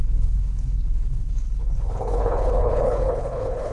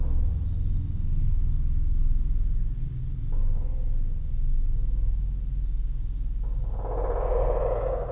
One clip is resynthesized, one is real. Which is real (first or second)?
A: second